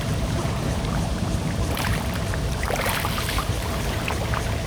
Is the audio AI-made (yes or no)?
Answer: yes